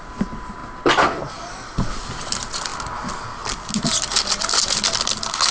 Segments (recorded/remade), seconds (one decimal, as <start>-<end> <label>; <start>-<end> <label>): 0.0-5.5 recorded